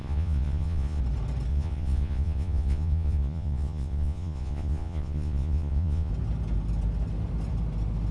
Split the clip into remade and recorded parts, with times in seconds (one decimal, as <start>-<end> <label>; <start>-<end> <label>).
0.0-1.0 remade; 1.0-1.5 recorded; 1.5-6.1 remade; 6.1-8.1 recorded